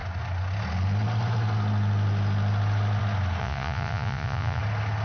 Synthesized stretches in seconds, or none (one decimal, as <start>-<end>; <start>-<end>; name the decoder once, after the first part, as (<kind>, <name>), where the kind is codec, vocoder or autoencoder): 3.4-4.6 (vocoder, Vocos)